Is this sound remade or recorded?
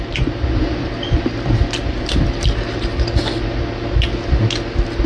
recorded